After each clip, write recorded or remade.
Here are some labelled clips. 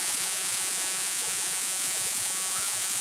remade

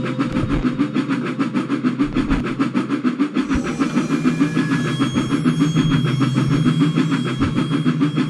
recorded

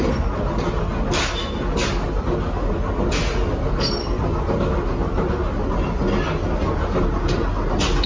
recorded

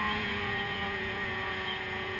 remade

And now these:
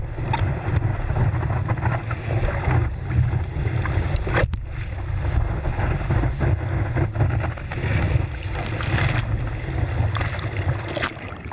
recorded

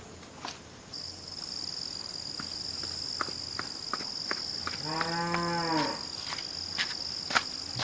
recorded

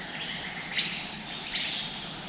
recorded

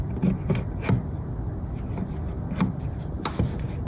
recorded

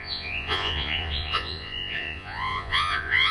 remade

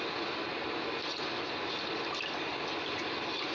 recorded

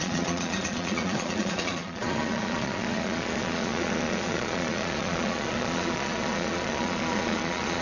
remade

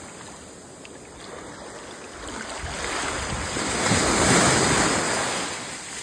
recorded